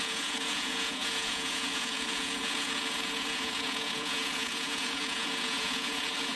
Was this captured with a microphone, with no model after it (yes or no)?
no